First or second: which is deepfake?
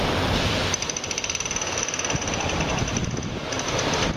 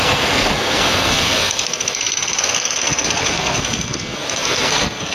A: second